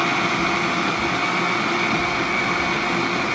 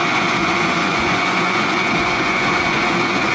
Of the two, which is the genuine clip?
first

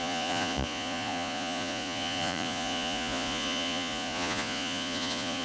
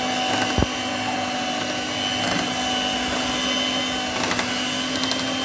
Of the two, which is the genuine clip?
second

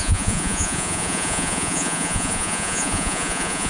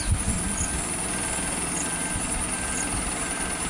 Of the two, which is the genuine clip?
second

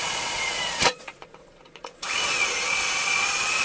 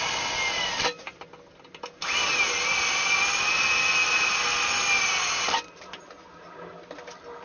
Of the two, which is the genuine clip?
second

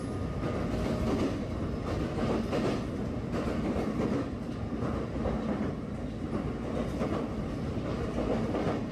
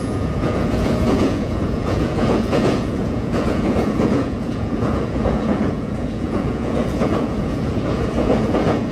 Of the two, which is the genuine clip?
first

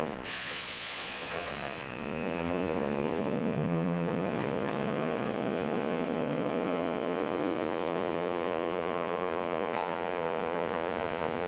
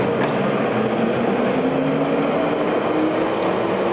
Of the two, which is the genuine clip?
second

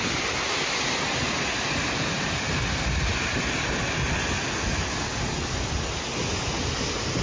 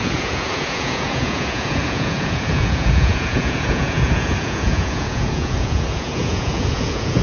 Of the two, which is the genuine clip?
first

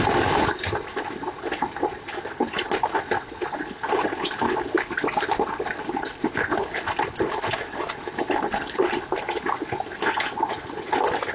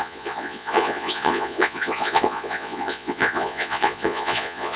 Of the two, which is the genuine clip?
first